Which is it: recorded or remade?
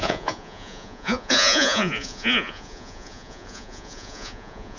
remade